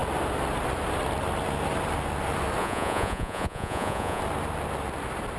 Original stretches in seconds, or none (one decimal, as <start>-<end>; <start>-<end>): 0.0-2.6; 4.2-5.4